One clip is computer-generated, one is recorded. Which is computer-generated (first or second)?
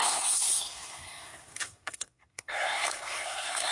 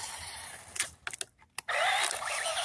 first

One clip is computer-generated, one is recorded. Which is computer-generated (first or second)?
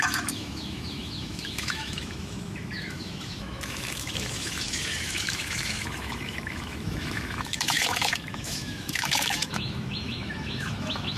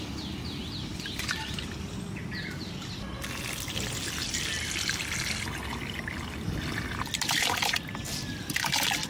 first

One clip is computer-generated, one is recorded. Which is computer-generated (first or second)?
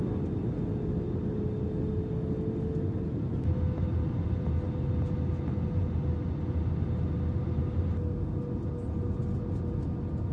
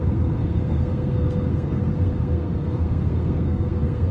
second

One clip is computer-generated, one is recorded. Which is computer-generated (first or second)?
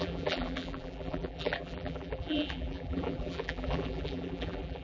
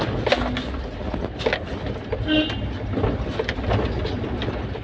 first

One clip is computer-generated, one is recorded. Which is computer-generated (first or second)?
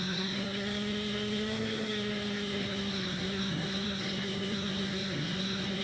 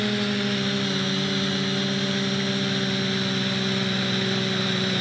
first